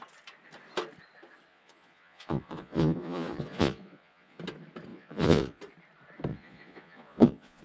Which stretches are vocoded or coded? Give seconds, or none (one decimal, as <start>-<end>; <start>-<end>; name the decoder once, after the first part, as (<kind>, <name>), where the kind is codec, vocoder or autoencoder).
1.5-4.4 (vocoder, Vocos); 4.9-5.6; 6.3-7.6